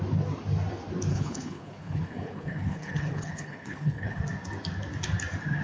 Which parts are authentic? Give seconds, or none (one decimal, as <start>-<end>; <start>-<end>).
0.0-1.1; 4.2-5.6